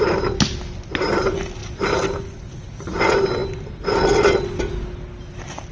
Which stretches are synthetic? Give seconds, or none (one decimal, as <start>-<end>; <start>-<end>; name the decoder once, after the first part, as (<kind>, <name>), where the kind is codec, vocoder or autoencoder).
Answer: none